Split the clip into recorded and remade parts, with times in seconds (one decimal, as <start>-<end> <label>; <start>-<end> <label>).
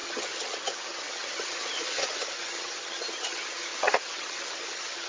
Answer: 0.0-5.1 remade